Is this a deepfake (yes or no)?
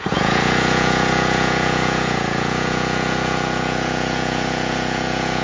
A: yes